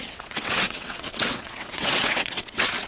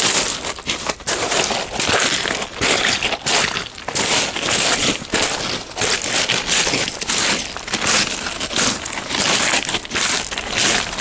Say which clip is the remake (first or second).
first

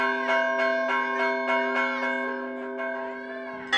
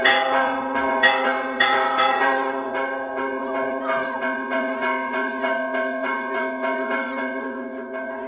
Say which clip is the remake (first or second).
second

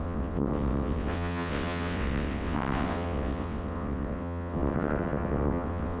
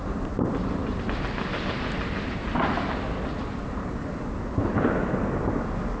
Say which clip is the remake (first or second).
first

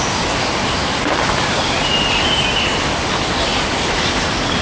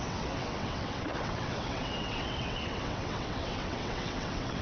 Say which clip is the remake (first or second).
second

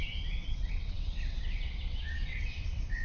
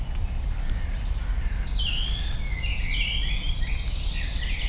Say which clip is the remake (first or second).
first